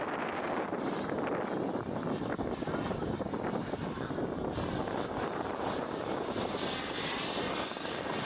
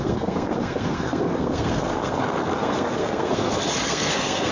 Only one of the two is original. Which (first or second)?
first